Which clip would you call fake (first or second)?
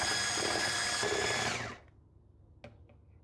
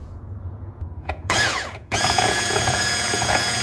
second